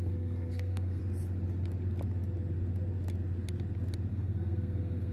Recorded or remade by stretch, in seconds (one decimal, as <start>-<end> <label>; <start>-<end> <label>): 0.0-1.0 remade; 1.0-4.1 recorded; 4.1-5.1 remade